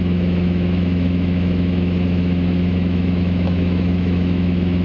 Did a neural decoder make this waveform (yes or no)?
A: yes